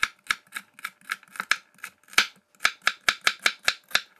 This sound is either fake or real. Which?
real